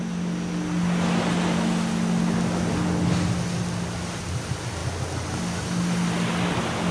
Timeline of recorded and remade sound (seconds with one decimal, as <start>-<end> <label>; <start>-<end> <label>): 0.0-6.9 recorded